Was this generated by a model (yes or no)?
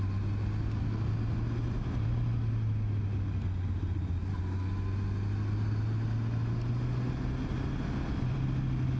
no